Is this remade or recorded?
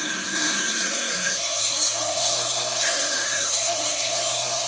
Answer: remade